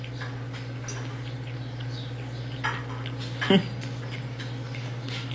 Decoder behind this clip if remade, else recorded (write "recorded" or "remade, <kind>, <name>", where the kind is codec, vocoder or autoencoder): recorded